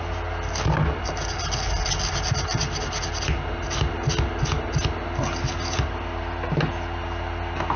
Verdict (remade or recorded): recorded